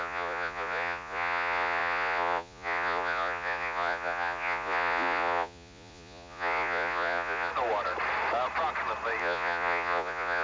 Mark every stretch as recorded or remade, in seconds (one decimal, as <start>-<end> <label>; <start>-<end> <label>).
0.0-7.5 remade; 7.5-9.2 recorded; 9.2-10.4 remade